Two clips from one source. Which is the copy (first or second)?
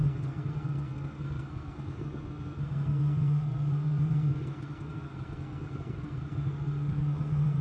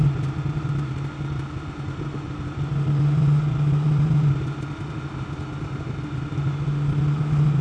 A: first